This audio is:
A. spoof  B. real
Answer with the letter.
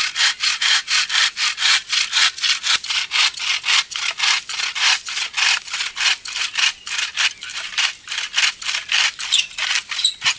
B